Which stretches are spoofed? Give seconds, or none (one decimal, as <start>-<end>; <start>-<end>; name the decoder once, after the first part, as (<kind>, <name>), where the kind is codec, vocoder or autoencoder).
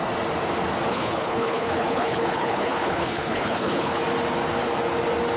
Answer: 0.9-4.0 (codec, HILCodec)